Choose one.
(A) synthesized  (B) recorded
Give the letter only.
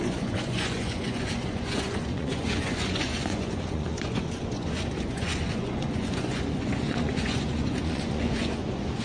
A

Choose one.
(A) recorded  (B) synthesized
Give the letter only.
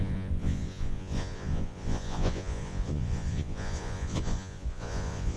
B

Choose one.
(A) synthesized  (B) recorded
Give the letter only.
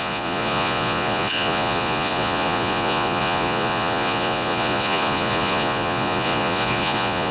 A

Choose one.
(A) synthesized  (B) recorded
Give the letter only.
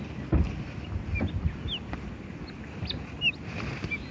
B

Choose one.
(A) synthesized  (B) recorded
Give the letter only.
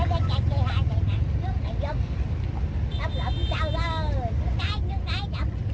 B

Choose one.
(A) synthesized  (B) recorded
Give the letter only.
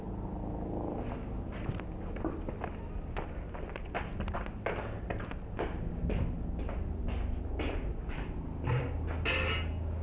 B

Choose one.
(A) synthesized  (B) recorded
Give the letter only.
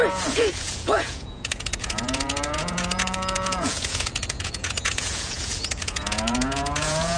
A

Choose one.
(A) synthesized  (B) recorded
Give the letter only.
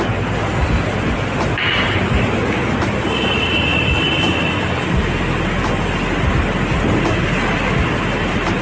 B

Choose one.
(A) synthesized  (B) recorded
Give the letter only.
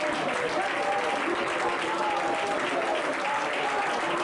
B